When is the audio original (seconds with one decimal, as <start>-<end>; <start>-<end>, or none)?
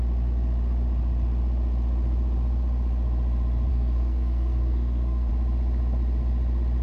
0.0-3.7; 5.3-6.8